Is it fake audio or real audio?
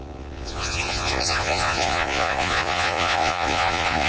fake